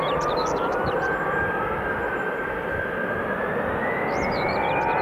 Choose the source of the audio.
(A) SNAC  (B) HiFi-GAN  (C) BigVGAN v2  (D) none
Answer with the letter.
D